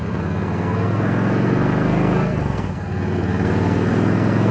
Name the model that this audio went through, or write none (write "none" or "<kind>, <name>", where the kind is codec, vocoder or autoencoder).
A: codec, SNAC